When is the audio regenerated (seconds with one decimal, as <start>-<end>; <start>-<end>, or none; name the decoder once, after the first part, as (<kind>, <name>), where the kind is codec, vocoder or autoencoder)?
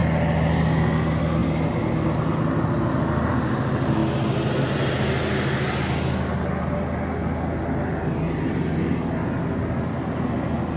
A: none